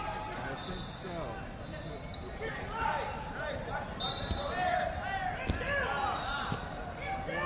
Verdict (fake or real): real